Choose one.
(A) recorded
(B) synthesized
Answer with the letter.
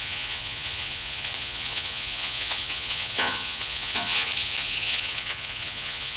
B